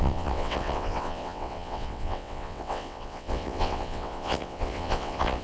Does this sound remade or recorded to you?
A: remade